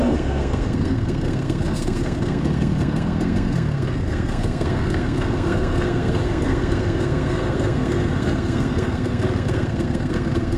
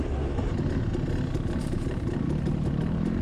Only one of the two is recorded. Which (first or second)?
second